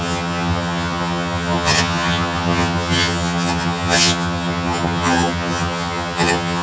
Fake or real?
fake